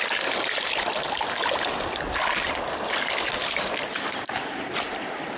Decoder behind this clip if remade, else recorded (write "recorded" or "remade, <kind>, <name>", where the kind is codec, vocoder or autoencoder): recorded